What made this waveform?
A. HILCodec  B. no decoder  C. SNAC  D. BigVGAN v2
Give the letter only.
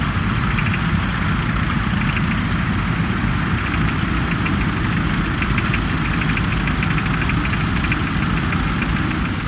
B